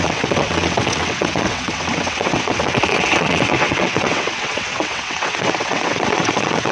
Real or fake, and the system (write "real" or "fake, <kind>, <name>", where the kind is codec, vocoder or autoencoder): fake, vocoder, WaveNeXt